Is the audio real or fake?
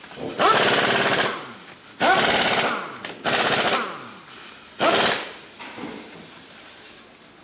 real